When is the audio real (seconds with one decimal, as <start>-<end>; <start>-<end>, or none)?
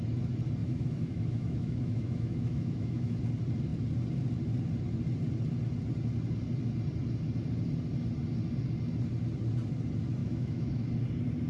0.0-0.6; 3.2-10.2; 10.9-11.5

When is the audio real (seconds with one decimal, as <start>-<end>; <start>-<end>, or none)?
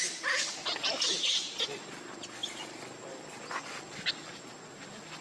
0.0-5.2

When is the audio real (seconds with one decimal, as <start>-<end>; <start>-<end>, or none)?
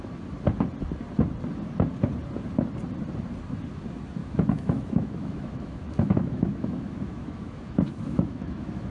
0.0-4.2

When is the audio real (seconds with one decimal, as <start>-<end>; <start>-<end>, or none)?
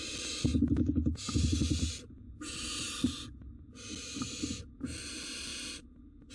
0.0-6.3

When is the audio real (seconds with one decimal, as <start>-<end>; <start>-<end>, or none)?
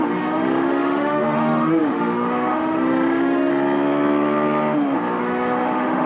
3.5-5.2